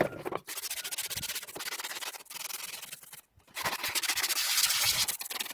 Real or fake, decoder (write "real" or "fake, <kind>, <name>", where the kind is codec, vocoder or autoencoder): real